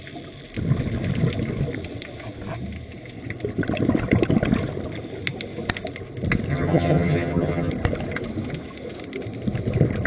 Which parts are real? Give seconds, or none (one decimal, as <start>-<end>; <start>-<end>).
0.0-6.5; 7.7-10.1